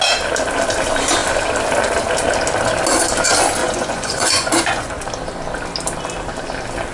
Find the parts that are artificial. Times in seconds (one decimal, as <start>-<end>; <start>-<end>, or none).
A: 3.6-5.0